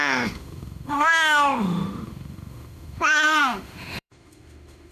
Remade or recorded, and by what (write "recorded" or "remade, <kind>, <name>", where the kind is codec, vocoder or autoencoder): remade, autoencoder, DAC-VAE